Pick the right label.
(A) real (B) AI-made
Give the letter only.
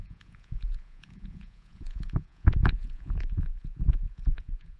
B